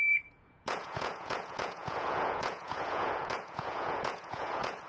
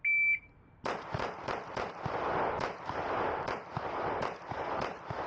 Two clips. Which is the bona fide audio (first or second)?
second